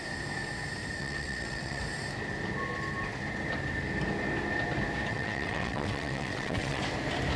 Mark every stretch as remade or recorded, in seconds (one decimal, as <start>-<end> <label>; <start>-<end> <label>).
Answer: 0.0-1.0 recorded; 1.0-1.8 remade; 1.8-5.1 recorded; 5.1-6.8 remade; 6.8-7.4 recorded